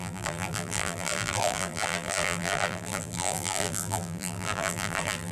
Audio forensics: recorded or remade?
remade